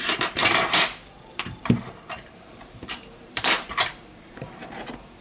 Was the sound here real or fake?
fake